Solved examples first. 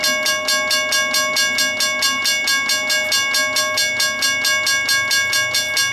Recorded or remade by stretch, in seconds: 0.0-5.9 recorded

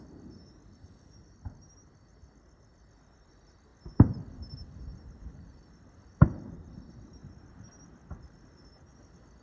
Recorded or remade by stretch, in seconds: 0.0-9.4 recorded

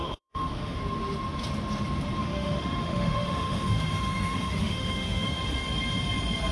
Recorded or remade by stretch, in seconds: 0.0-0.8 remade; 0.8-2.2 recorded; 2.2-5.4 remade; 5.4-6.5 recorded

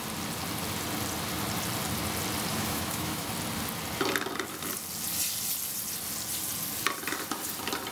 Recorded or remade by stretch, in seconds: 0.0-2.5 recorded; 2.5-3.3 remade; 3.3-7.9 recorded

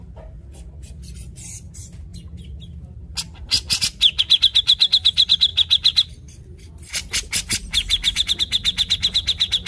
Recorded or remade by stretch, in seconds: 0.0-9.7 recorded

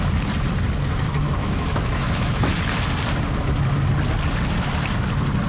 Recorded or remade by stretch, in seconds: 0.0-1.4 recorded; 1.4-2.5 remade; 2.5-5.5 recorded